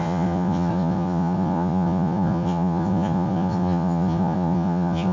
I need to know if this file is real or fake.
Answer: fake